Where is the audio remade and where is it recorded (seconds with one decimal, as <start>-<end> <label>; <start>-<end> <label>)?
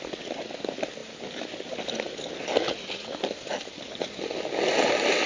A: 0.0-5.3 recorded